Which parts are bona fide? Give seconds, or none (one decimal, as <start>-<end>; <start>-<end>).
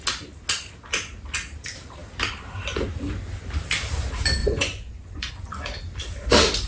0.0-4.4; 5.3-6.7